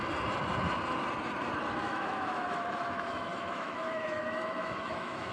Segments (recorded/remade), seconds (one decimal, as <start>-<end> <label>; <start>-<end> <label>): 0.0-1.8 recorded; 1.8-5.3 remade